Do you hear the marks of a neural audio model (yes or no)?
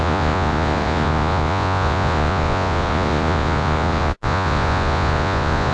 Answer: yes